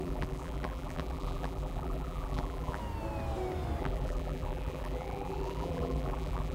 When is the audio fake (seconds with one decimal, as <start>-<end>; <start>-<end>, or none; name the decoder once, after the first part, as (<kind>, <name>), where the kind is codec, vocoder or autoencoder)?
0.0-2.8 (vocoder, BigVGAN v2); 3.8-6.5